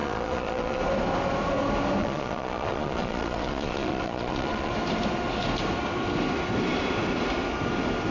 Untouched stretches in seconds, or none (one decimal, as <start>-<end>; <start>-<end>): 0.8-2.0; 4.7-8.1